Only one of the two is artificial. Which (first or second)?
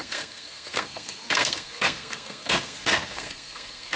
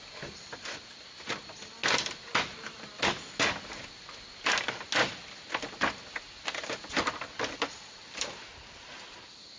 first